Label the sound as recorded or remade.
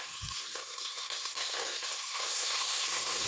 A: remade